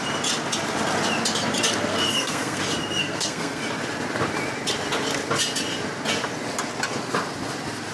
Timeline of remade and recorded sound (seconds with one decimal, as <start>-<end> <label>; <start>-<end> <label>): 0.0-1.9 recorded; 1.9-2.6 remade; 2.6-3.0 recorded; 3.0-3.6 remade; 3.6-7.9 recorded